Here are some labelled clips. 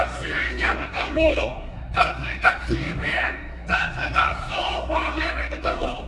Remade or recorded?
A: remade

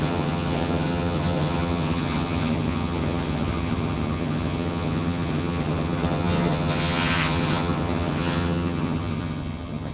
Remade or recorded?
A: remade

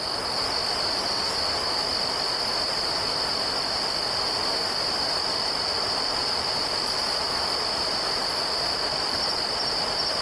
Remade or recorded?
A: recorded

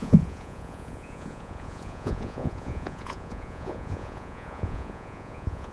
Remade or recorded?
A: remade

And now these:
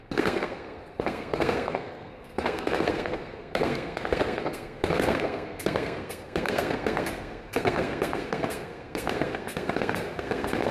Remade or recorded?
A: remade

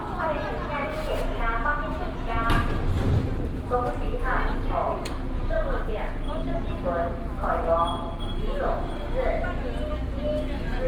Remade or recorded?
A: recorded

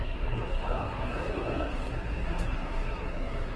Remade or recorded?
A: remade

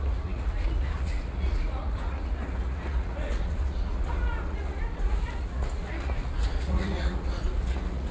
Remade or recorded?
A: remade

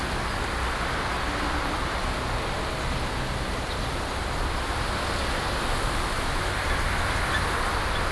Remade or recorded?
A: recorded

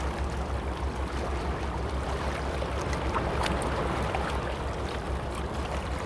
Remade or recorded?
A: recorded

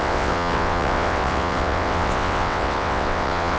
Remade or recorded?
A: remade